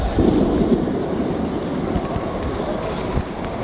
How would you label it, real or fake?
real